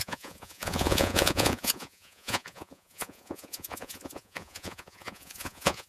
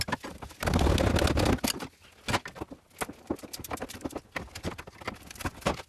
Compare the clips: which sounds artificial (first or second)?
first